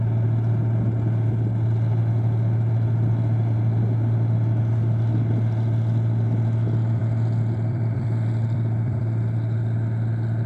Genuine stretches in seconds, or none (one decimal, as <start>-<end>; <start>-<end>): 0.0-7.0; 9.0-10.5